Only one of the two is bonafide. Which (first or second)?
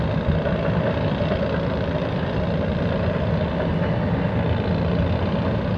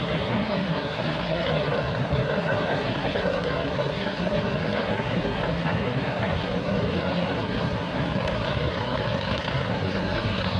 first